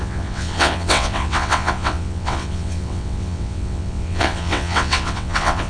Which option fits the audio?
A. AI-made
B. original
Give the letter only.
A